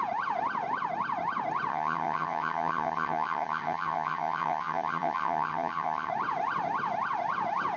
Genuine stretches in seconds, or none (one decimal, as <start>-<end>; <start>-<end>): 0.0-1.7; 6.1-7.8